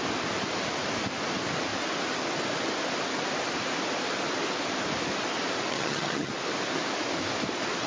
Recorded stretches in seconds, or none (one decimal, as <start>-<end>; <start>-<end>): 0.0-5.7; 6.3-7.9